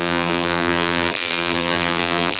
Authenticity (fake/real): fake